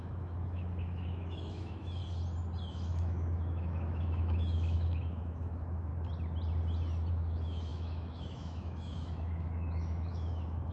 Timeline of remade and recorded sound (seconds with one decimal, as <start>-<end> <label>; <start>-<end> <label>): 0.0-2.0 remade; 2.0-2.7 recorded; 2.7-5.9 remade; 5.9-7.1 recorded; 7.1-10.7 remade